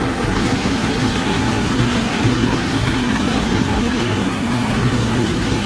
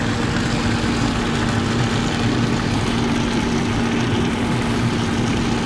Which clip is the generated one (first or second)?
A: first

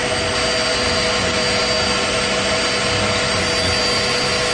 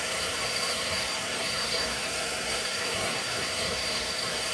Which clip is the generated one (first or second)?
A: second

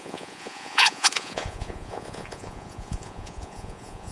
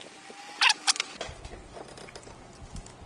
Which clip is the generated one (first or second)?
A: first